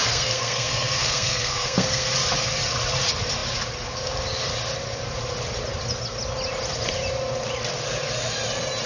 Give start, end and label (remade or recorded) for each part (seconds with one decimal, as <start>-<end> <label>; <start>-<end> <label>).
0.0-2.1 remade; 2.1-8.9 recorded